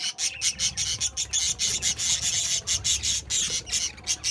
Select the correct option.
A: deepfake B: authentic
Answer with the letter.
B